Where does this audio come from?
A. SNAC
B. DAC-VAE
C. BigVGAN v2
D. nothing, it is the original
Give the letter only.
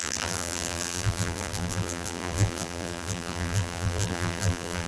C